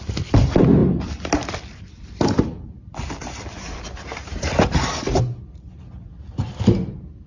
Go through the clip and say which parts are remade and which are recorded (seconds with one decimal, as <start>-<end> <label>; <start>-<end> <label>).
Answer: 0.0-0.8 recorded; 0.8-5.2 remade; 5.2-7.3 recorded